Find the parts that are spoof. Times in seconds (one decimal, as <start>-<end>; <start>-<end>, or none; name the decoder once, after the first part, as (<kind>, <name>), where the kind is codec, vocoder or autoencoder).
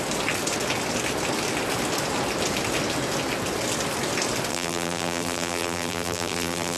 4.5-6.8 (vocoder, BigVGAN v2)